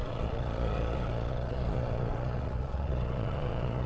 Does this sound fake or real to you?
fake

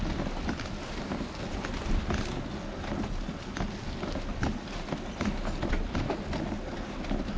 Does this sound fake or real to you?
real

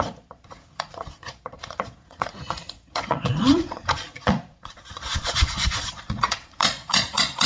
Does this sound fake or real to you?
fake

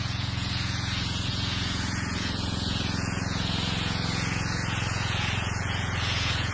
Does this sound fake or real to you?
fake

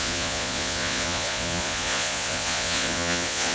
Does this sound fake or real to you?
fake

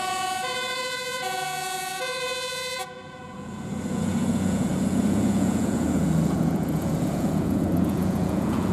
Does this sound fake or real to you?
fake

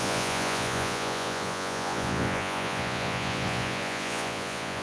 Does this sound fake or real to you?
fake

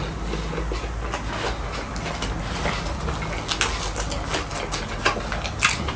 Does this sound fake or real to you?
real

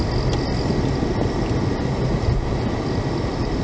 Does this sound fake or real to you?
real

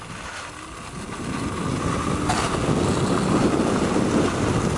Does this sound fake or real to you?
real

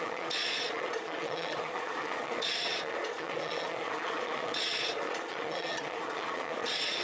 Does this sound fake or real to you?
fake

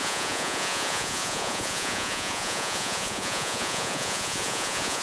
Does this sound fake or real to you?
fake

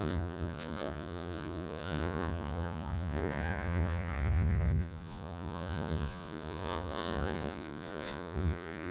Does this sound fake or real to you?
fake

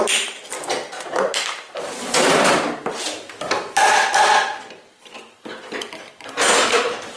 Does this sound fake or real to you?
real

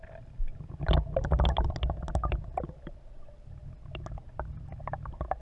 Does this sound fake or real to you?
real